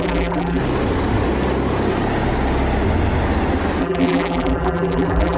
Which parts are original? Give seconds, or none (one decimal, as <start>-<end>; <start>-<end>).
0.6-3.8